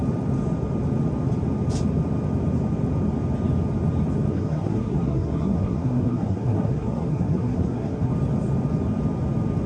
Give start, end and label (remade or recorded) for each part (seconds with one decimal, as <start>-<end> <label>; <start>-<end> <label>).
0.0-4.3 recorded; 4.3-8.1 remade; 8.1-9.7 recorded